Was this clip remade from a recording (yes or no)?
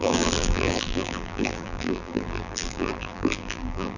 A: yes